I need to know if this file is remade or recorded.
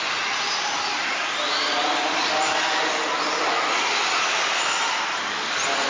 recorded